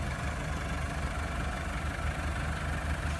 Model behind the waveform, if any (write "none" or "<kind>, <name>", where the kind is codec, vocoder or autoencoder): none